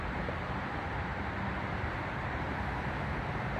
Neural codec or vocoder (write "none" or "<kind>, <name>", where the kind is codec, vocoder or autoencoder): vocoder, BigVGAN v2